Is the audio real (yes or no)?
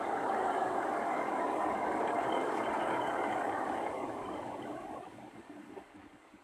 no